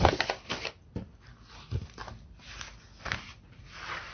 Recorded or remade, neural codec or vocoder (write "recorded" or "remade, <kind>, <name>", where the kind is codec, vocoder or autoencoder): recorded